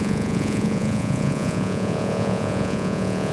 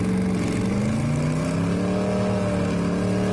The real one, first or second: second